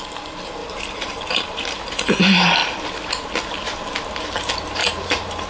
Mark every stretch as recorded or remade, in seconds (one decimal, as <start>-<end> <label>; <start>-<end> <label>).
0.0-0.6 recorded; 0.6-1.6 remade; 1.6-4.8 recorded; 4.8-5.5 remade

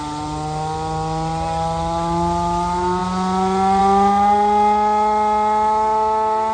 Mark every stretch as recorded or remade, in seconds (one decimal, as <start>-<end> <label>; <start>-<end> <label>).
0.0-6.5 recorded